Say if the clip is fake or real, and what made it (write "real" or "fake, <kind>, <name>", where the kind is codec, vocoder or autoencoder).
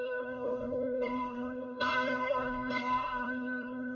fake, codec, SNAC